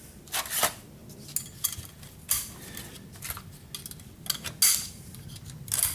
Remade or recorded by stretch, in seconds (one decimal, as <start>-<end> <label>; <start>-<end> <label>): 0.0-5.9 recorded